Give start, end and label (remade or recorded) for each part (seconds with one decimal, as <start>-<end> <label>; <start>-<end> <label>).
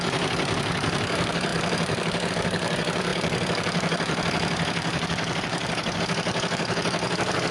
0.0-7.5 remade